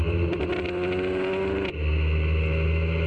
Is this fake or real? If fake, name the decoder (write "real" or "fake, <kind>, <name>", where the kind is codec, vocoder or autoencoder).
real